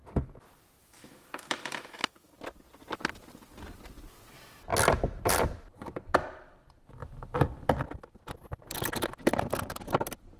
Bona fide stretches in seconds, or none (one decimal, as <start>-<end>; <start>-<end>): 0.0-0.8; 2.3-10.4